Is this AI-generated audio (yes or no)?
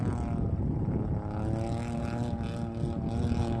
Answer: no